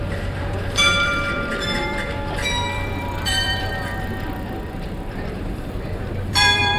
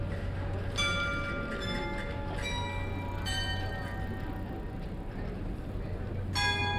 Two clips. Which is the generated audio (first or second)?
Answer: first